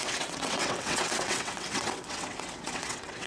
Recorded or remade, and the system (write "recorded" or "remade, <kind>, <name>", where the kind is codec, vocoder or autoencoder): remade, vocoder, WaveNeXt